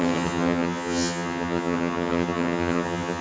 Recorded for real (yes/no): no